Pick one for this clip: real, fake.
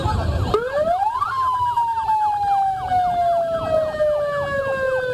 real